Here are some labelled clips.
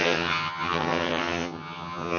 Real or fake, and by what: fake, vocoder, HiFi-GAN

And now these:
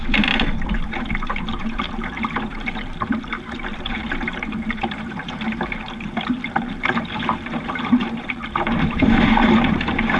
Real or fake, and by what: fake, vocoder, BigVGAN v2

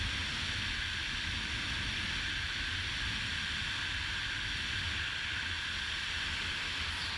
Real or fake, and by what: real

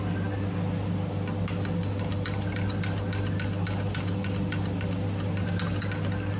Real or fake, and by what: real